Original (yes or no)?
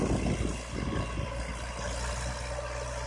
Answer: yes